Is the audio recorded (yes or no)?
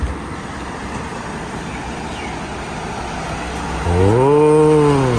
yes